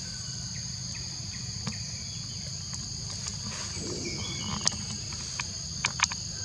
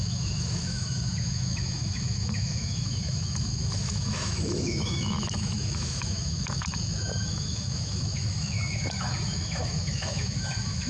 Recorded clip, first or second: first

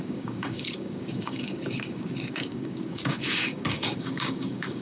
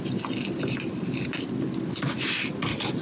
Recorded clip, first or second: second